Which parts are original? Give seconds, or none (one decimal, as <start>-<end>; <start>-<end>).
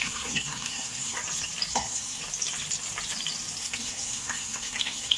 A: 1.2-1.7; 2.2-3.6